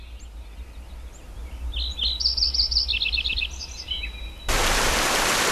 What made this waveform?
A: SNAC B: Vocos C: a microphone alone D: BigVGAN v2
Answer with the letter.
C